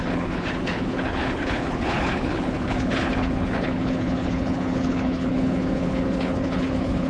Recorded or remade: remade